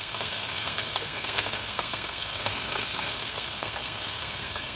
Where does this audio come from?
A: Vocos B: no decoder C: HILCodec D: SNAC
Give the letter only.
D